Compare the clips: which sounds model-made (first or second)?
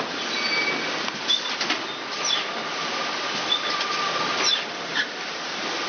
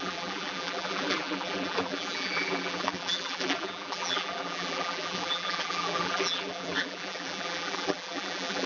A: second